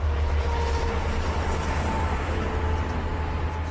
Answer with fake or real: real